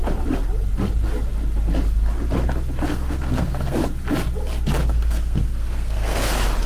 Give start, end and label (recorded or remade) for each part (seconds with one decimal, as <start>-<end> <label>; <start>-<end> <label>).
0.0-2.9 recorded; 2.9-3.8 remade; 3.8-4.8 recorded; 4.8-6.2 remade; 6.2-6.7 recorded